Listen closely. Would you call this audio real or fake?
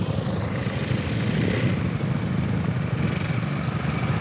real